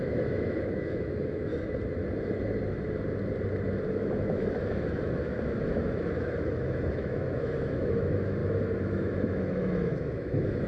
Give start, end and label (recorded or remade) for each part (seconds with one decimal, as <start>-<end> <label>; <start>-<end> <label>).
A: 0.0-1.5 remade; 1.5-3.9 recorded; 3.9-10.7 remade